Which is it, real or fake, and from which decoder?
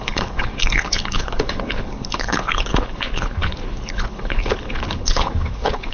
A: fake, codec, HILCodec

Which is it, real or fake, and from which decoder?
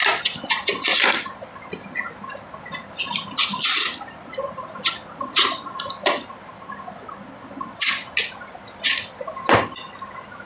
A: real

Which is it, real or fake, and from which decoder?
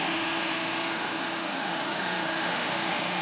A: fake, autoencoder, DAC-VAE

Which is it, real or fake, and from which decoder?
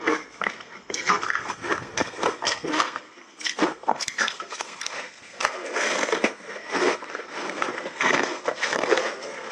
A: fake, codec, SNAC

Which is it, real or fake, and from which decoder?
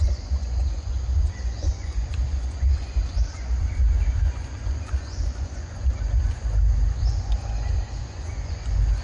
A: fake, vocoder, Vocos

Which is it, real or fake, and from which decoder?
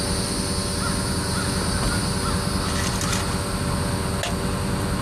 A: real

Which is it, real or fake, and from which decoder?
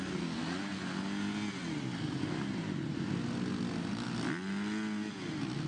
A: real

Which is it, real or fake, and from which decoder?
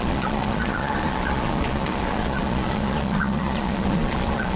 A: fake, vocoder, Vocos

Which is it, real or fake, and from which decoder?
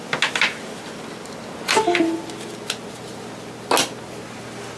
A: real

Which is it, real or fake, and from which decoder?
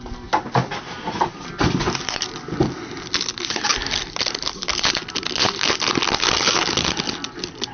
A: real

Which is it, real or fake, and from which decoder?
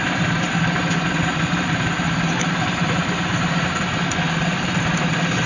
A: real